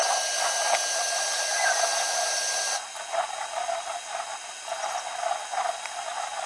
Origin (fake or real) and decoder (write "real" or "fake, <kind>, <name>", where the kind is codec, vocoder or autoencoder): real